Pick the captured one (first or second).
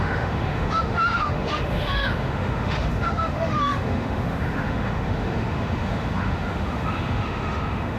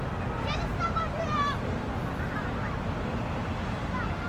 second